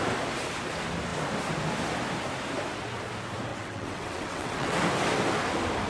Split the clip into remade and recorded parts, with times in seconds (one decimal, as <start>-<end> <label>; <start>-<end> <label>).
0.0-3.5 recorded; 3.5-4.8 remade; 4.8-5.9 recorded